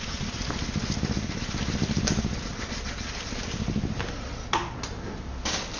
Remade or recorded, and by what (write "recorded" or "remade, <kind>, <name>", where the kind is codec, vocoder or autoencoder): recorded